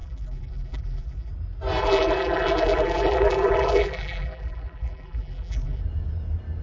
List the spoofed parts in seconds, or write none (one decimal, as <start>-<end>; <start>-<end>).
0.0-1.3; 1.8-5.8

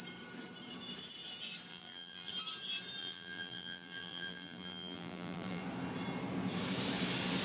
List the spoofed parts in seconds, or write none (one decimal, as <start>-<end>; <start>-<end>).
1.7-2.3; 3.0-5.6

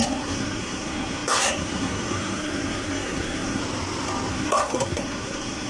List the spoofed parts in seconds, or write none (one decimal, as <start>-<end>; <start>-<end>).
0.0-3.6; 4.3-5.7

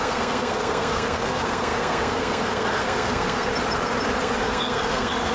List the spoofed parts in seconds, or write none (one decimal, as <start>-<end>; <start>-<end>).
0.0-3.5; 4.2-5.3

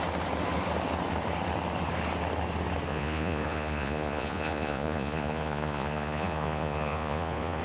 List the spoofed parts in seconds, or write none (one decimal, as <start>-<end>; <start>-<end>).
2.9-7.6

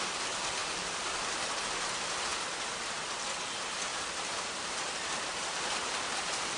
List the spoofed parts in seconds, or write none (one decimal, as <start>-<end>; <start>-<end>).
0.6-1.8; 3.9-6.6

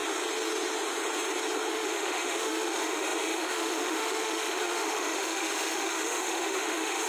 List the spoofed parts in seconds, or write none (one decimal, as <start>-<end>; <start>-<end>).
1.7-7.1